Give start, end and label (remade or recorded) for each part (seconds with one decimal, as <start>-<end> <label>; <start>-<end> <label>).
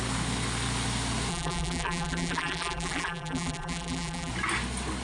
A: 0.0-1.3 recorded; 1.3-4.3 remade; 4.3-5.0 recorded